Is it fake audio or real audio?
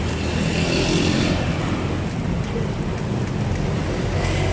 real